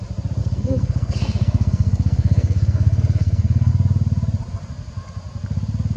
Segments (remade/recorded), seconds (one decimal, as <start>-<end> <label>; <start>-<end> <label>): 0.0-0.4 recorded; 0.4-3.7 remade; 3.7-6.0 recorded